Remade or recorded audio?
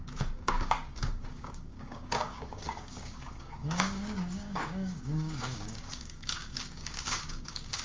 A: remade